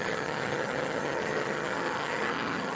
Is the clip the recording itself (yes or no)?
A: no